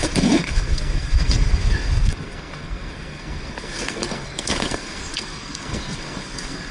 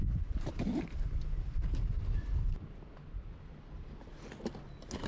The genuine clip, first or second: second